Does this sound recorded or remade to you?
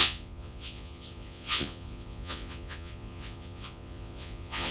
remade